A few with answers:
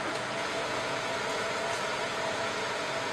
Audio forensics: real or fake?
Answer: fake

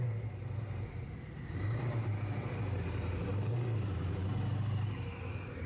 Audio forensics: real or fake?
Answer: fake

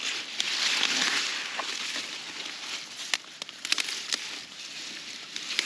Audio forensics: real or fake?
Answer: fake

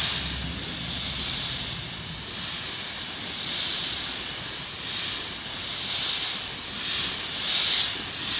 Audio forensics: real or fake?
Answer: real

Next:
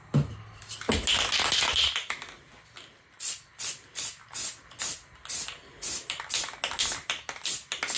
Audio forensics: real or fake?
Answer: real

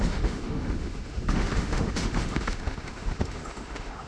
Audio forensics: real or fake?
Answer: fake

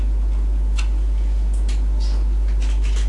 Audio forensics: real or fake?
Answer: real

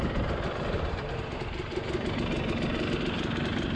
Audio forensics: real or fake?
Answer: fake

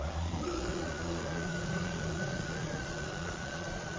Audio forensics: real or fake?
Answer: fake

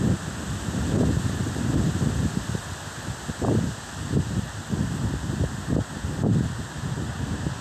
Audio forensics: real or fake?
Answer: real